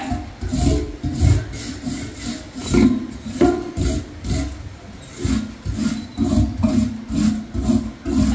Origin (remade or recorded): recorded